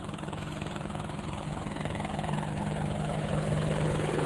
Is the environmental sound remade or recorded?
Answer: remade